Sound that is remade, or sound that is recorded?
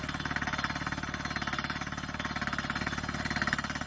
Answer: recorded